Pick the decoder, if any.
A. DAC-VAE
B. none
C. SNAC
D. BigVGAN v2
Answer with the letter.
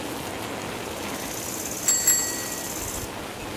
B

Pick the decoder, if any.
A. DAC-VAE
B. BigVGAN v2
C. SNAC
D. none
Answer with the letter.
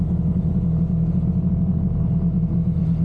D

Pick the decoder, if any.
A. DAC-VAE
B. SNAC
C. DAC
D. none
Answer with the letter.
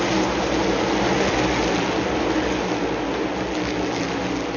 D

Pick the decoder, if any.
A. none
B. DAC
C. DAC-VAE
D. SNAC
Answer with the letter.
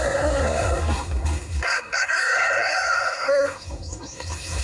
D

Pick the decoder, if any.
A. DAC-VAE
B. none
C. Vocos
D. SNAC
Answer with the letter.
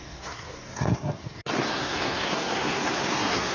D